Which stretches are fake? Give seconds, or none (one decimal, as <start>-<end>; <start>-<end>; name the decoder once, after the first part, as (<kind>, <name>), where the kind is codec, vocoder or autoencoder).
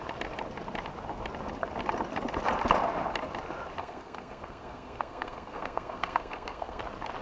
3.8-6.8 (codec, SNAC)